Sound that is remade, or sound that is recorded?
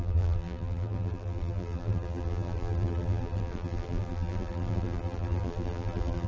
remade